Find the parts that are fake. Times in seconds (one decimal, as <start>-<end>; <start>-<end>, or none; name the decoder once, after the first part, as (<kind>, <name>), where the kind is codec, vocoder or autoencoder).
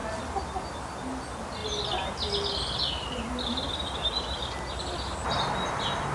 none